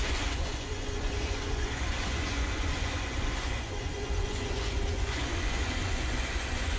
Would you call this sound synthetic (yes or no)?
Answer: yes